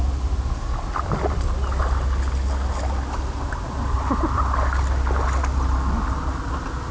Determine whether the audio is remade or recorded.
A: recorded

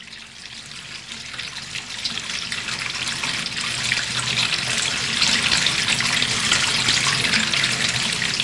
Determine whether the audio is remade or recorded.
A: recorded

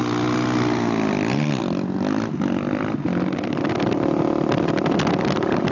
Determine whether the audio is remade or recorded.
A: recorded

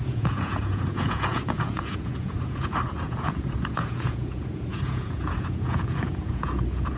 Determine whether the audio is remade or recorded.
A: remade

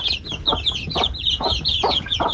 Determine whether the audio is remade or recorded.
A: remade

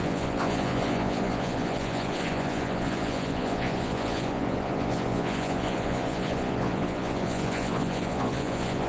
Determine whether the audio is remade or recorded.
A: remade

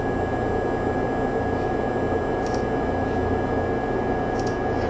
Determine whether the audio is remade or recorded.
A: recorded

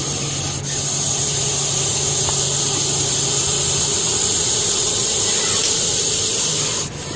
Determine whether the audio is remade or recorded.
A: recorded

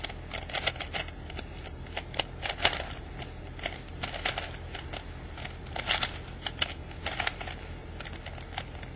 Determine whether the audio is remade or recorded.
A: recorded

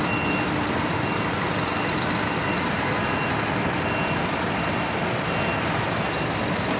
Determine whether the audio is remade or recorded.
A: recorded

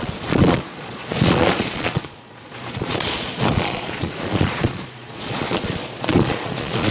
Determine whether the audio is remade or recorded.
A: remade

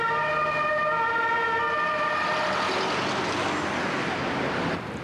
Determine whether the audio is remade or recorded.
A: recorded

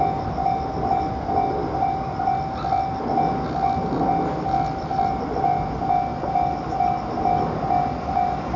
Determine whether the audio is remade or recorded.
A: recorded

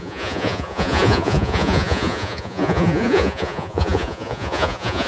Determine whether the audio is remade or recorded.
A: remade